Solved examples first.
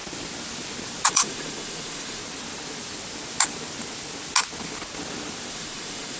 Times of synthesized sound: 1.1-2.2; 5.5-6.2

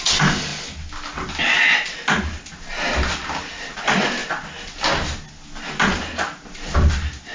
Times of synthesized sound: none

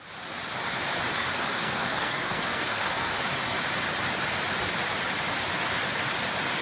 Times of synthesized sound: 1.2-3.1

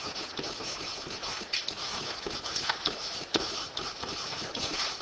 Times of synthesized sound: 3.0-4.5

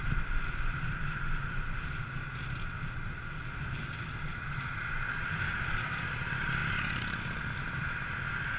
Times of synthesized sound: none

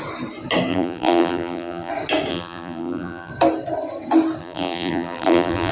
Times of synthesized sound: 0.7-1.9; 2.3-3.3; 4.4-5.7

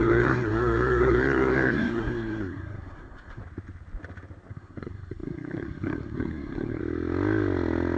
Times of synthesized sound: 0.0-3.4; 4.5-6.8

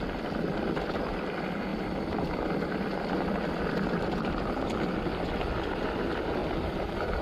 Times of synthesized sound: none